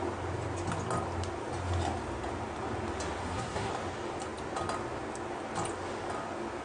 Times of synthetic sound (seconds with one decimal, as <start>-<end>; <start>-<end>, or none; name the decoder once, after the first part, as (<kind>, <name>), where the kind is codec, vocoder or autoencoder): 3.2-3.7 (codec, SNAC)

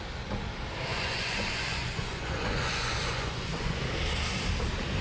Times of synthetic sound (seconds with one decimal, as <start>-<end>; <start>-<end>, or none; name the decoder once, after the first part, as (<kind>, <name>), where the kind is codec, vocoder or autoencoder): 0.9-3.8 (vocoder, Vocos)